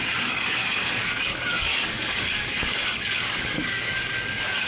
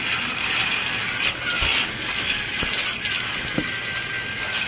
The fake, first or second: first